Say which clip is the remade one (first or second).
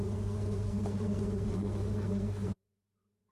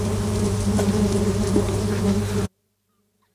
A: first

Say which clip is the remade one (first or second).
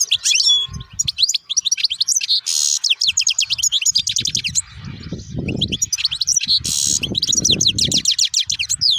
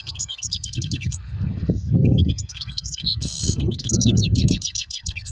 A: second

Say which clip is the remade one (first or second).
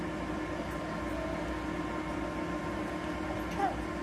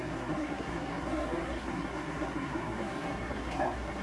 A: second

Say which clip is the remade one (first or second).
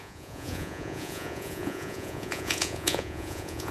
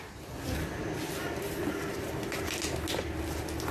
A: first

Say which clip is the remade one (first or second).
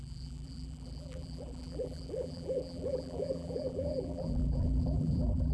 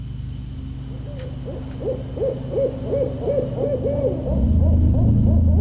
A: first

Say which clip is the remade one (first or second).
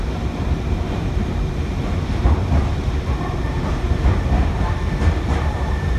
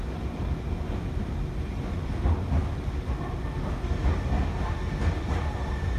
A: first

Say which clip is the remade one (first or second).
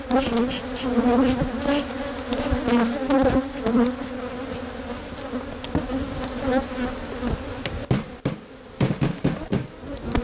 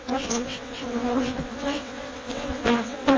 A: second